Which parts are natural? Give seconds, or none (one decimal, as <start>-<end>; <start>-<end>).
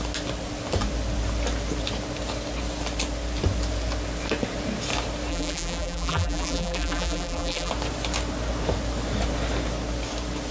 0.0-5.3; 7.7-10.5